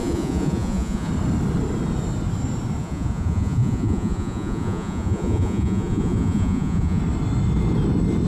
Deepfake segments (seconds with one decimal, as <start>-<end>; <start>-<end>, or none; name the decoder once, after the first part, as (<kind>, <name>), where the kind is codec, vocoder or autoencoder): 0.0-1.1 (vocoder, Vocos); 2.8-7.0